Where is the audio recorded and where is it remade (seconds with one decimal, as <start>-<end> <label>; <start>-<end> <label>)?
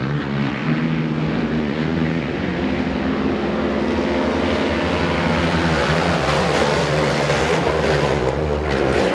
0.0-0.6 remade; 0.6-1.6 recorded; 1.6-2.5 remade; 2.5-5.4 recorded; 5.4-9.1 remade